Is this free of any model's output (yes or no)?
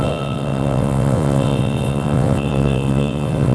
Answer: no